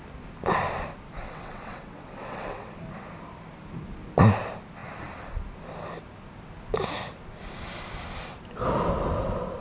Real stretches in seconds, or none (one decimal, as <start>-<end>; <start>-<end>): 0.0-1.2; 2.7-9.6